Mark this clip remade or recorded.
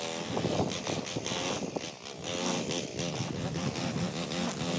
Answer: recorded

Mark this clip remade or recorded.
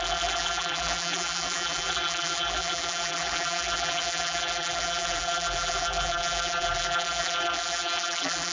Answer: remade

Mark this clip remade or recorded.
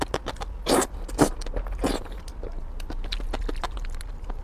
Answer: recorded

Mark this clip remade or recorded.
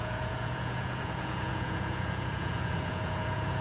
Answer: remade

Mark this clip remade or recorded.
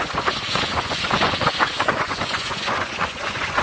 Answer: remade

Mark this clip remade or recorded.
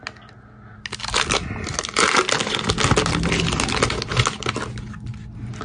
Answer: recorded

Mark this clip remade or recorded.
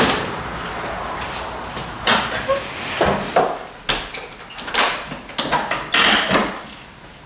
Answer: recorded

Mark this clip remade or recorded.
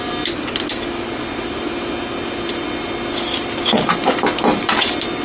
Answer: recorded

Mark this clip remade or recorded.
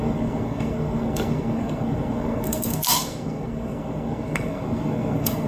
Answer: remade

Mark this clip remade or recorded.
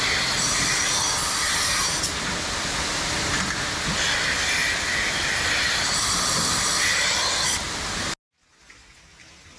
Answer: recorded